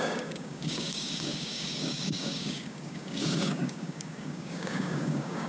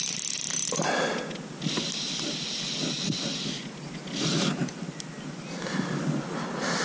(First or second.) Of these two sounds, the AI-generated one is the first